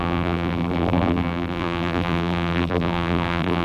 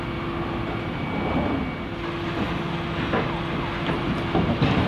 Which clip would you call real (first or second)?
second